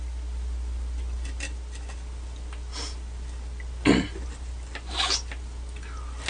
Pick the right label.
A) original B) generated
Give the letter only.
A